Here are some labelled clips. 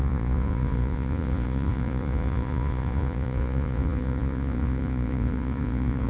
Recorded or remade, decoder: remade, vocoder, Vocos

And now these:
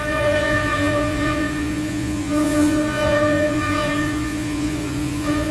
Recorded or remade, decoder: remade, vocoder, Vocos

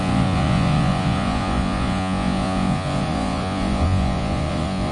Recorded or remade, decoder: remade, vocoder, Vocos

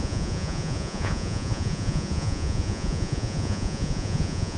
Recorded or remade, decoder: remade, vocoder, Vocos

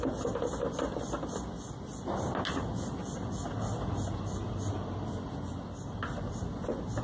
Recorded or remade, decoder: recorded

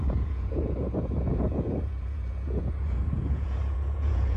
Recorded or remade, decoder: remade, vocoder, Vocos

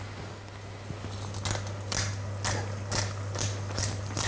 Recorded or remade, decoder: recorded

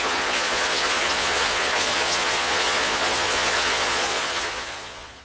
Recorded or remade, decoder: remade, vocoder, Vocos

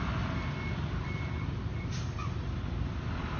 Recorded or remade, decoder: recorded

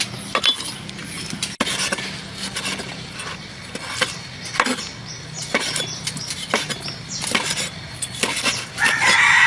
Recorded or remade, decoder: recorded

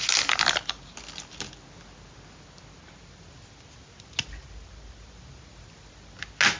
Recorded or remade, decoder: recorded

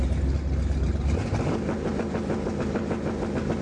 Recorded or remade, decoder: recorded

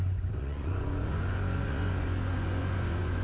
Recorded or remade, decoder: remade, vocoder, Vocos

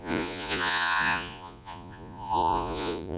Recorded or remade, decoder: remade, vocoder, Vocos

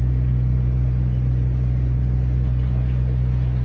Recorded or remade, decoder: remade, vocoder, Vocos